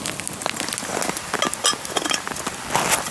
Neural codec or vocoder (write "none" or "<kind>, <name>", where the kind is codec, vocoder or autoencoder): none